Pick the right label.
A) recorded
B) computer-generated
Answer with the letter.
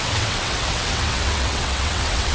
B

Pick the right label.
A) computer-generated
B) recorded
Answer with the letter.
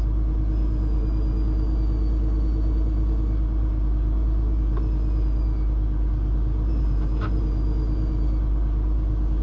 B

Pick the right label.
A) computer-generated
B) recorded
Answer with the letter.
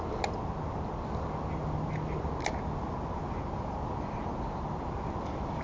B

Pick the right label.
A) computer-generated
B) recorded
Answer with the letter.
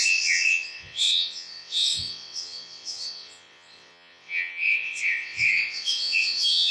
A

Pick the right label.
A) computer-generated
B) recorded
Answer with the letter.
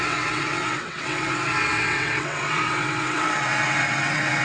A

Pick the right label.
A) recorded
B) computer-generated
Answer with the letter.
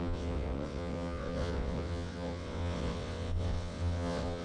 B